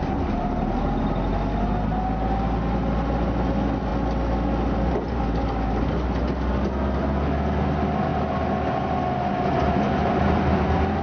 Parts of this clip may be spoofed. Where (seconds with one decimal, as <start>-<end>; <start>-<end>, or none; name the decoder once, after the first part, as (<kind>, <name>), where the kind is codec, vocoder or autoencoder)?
none

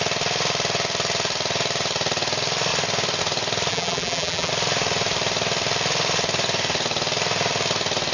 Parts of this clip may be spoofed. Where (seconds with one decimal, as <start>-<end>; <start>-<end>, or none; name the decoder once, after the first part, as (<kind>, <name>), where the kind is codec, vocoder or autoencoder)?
3.7-4.5 (vocoder, BigVGAN v2)

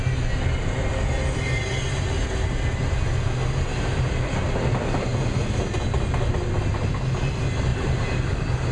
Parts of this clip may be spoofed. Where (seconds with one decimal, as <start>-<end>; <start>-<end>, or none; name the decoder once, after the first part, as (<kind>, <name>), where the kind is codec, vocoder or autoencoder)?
7.7-8.7 (vocoder, BigVGAN v2)

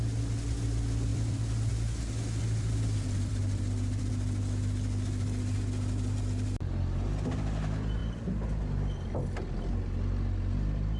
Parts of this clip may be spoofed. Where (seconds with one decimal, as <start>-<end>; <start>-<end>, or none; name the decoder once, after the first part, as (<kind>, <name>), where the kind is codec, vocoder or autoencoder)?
1.1-1.7 (vocoder, BigVGAN v2); 2.4-4.1

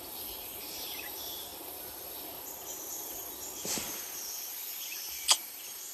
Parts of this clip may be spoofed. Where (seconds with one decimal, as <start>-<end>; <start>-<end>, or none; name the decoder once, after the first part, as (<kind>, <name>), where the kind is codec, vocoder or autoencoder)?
0.0-1.5 (vocoder, BigVGAN v2); 4.9-5.9

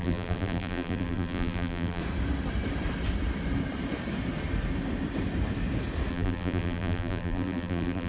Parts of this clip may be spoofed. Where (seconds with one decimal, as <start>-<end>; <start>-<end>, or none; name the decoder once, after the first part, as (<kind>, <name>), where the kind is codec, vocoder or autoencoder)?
0.0-2.0 (vocoder, BigVGAN v2); 6.1-8.1